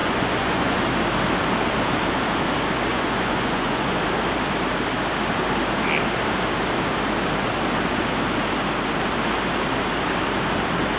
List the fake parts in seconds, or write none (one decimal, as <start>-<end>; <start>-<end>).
0.0-0.8; 2.9-4.0